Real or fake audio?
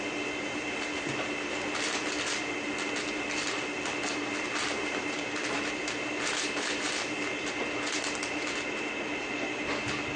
real